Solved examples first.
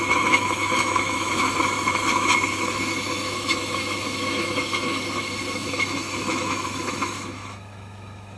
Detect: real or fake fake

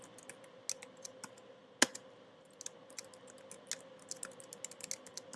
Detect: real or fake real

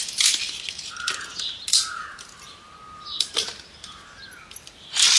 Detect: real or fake real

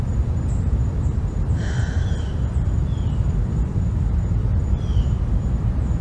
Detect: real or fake fake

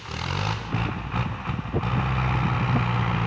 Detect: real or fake real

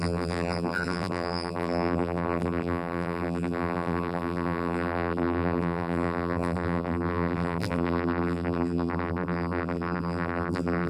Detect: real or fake fake